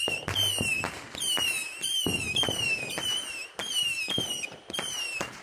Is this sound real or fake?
real